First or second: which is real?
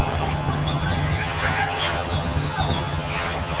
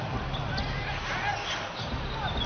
second